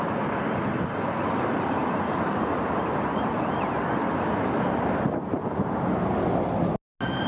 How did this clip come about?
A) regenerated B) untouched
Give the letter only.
B